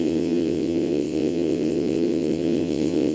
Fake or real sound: fake